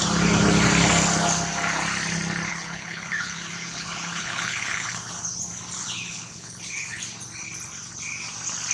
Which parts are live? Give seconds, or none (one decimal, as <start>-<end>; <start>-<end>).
0.0-2.5; 5.1-5.8; 7.0-8.7